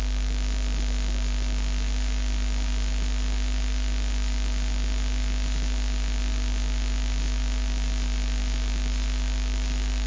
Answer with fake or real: real